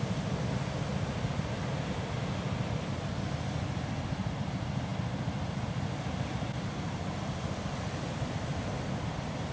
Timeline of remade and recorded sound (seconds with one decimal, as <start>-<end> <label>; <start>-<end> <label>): 0.0-9.5 recorded